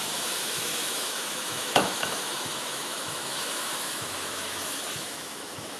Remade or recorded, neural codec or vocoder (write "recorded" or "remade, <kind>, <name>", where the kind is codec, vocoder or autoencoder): remade, autoencoder, DAC-VAE